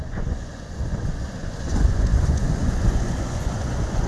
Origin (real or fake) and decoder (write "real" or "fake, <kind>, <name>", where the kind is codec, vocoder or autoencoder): fake, vocoder, Vocos